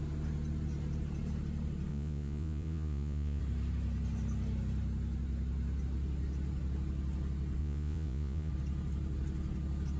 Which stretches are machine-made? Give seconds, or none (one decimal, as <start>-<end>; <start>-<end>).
1.9-3.4; 7.6-8.5